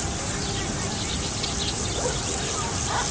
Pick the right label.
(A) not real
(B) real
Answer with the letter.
B